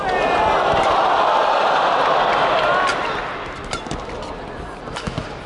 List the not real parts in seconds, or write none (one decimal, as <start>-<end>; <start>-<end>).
none